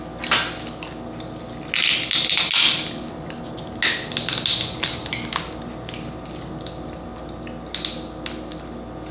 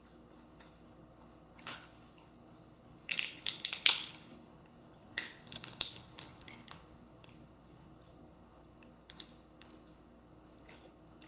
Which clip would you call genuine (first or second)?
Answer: first